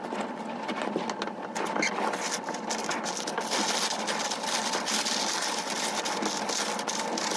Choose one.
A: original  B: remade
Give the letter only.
A